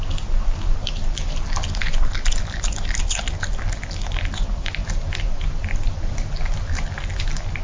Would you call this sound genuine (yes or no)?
yes